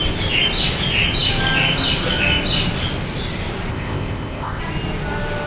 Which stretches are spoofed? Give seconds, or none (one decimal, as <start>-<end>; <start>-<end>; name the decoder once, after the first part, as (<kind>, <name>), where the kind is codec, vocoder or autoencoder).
3.7-4.6 (codec, ZipCodec)